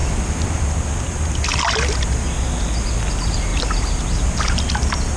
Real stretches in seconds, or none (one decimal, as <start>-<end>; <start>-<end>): 0.0-3.5; 4.6-5.2